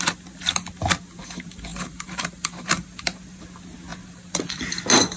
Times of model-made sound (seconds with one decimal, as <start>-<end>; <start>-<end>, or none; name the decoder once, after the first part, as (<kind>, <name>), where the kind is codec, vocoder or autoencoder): 1.7-3.4 (vocoder, BigVGAN v2); 3.9-4.6